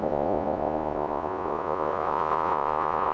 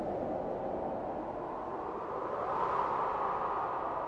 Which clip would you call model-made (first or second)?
first